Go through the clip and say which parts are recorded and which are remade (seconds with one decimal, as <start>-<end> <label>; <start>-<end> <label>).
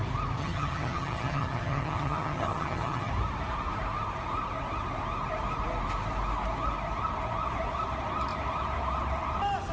0.0-0.4 recorded; 0.4-3.1 remade; 3.1-9.7 recorded